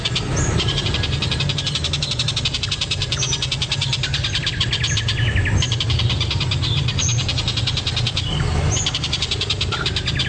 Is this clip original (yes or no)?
yes